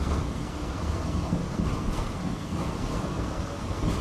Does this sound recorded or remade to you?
remade